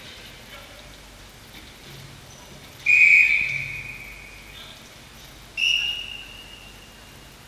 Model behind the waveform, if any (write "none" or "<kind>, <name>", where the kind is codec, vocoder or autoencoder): none